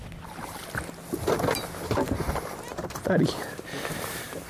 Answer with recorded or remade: recorded